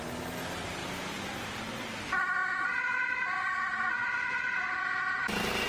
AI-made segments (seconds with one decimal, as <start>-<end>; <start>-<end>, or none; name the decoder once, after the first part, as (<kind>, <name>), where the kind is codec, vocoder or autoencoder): 0.8-1.4 (vocoder, BigVGAN v2); 4.0-4.8